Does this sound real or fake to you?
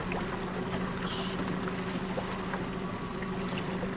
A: real